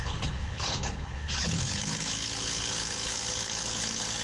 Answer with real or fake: fake